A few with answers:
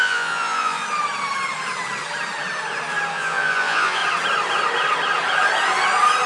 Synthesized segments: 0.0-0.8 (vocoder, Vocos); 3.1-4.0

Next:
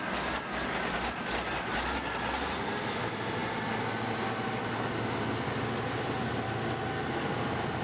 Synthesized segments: none

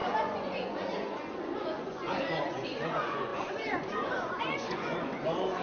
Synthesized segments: 0.0-5.6 (vocoder, Vocos)

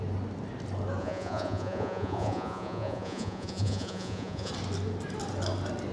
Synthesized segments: 1.0-4.5 (vocoder, Vocos)